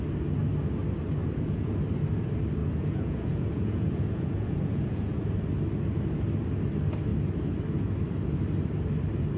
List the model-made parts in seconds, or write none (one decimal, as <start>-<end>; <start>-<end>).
1.2-1.7; 2.6-5.2